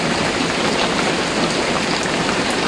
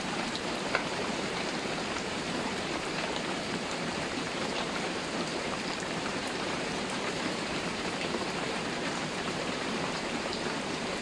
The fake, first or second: second